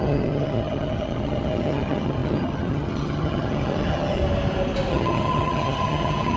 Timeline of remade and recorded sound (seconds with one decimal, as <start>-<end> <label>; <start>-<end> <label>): 0.0-4.2 remade; 4.2-4.9 recorded; 4.9-6.4 remade